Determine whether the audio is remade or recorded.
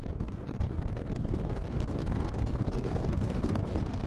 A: remade